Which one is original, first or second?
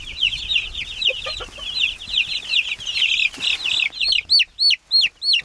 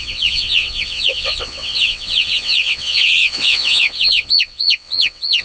first